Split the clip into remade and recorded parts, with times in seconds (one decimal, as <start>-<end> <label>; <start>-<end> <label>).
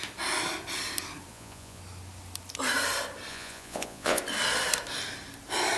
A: 0.0-1.3 recorded; 1.3-1.8 remade; 1.8-3.3 recorded; 3.3-4.2 remade; 4.2-5.8 recorded